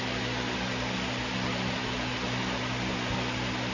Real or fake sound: real